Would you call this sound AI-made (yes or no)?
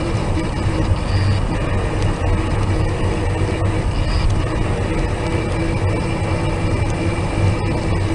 no